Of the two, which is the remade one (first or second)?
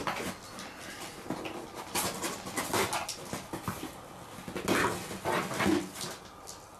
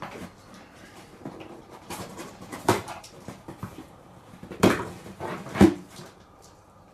second